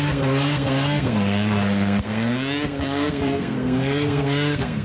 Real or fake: fake